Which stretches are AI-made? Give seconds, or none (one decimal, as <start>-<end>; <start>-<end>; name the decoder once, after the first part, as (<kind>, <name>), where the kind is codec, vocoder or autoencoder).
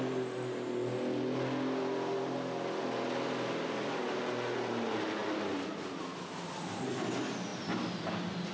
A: none